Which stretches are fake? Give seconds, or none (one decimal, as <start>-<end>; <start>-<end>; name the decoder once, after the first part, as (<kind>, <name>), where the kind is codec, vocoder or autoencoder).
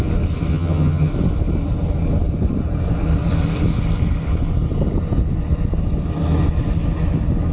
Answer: 0.5-1.1 (vocoder, HiFi-GAN)